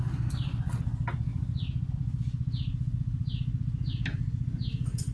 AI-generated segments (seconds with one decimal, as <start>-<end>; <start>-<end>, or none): none